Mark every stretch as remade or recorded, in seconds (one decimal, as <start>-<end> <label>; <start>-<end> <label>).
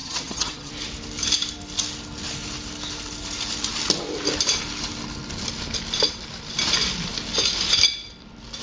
0.0-0.7 remade; 0.7-8.6 recorded